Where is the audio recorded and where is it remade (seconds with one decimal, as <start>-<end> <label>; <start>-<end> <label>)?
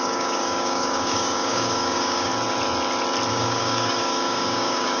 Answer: 0.0-2.3 remade; 2.3-3.3 recorded; 3.3-5.0 remade